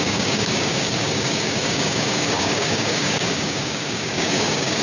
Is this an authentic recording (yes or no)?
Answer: no